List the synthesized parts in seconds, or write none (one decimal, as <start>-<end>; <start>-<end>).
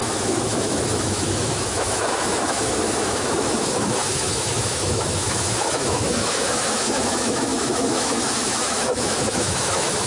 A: 0.0-10.1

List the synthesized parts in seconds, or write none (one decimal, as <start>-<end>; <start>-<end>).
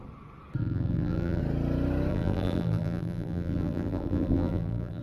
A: 0.6-1.4; 2.1-5.0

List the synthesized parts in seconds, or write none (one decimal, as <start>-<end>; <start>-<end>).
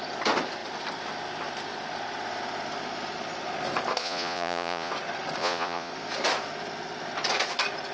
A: 4.0-4.9; 5.4-5.9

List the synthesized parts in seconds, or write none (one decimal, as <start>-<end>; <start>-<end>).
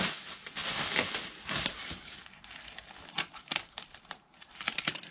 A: none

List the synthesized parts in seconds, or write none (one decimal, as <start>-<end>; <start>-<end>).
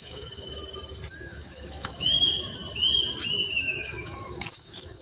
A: 0.0-0.6; 1.2-2.6; 3.6-5.0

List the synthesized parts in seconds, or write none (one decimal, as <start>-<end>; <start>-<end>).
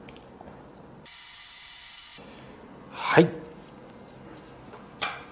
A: none